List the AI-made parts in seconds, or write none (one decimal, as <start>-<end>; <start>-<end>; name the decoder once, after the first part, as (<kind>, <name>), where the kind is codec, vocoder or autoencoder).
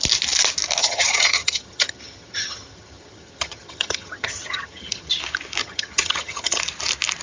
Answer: 0.8-5.1 (vocoder, HiFi-GAN); 5.6-6.6